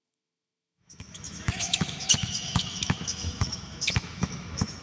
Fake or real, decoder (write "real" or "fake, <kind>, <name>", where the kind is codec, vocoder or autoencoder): fake, autoencoder, DAC-VAE